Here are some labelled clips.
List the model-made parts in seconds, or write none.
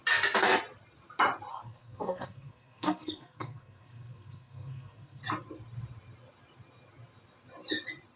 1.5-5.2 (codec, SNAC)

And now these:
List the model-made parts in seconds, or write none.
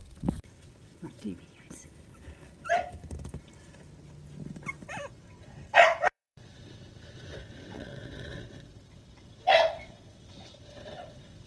0.0-1.8 (vocoder, WaveNeXt); 5.1-11.5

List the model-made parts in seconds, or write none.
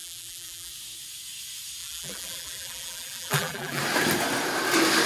0.0-0.7 (vocoder, BigVGAN v2); 1.8-3.8